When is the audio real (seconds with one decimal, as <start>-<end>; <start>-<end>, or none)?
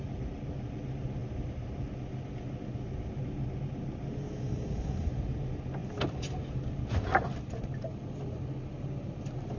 0.0-9.6